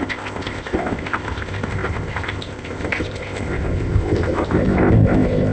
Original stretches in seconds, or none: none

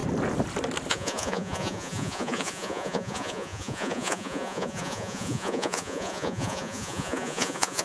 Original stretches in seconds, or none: 0.0-0.9

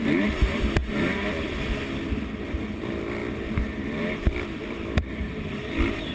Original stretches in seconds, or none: 0.0-6.1

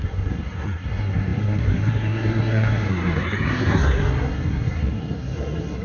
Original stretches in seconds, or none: none

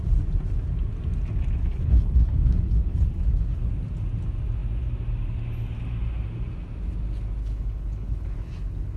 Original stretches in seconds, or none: 0.0-1.6; 3.7-7.4

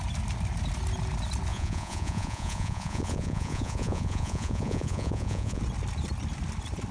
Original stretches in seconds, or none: 0.0-1.5; 5.6-6.9

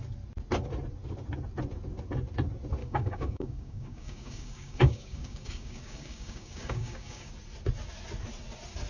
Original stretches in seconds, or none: 0.0-2.8; 7.3-8.9

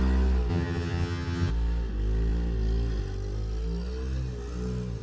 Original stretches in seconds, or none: 0.0-0.5; 1.5-5.0